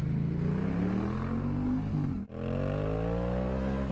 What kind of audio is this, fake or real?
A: real